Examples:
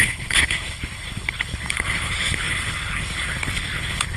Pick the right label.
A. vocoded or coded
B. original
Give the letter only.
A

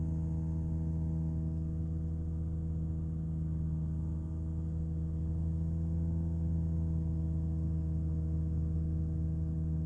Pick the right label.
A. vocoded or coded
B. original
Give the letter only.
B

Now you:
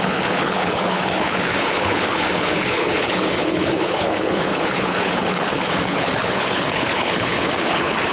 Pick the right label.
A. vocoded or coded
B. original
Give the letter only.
A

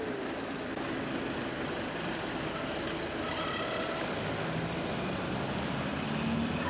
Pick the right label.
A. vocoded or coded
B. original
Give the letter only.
B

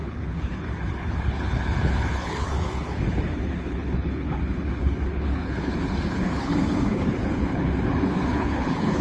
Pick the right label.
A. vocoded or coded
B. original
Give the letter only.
A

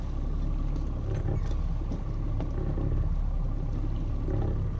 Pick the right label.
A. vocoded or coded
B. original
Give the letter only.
B